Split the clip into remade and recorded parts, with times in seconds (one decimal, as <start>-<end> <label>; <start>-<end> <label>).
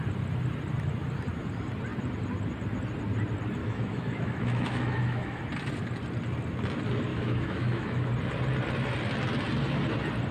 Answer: 0.0-3.6 recorded; 3.6-5.4 remade; 5.4-7.1 recorded; 7.1-8.1 remade; 8.1-10.3 recorded